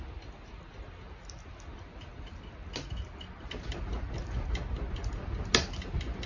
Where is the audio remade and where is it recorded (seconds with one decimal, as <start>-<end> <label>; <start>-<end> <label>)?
0.0-6.3 recorded